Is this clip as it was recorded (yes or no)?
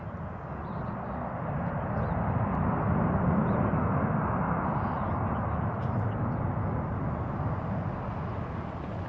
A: yes